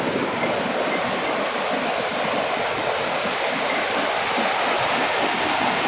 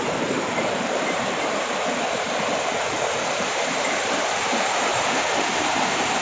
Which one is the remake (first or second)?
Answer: second